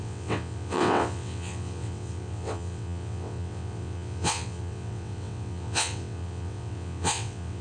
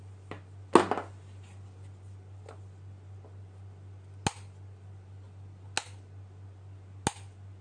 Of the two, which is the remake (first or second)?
first